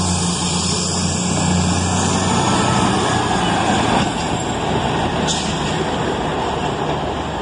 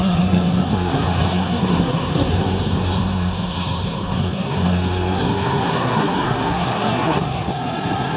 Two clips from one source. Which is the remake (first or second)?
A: second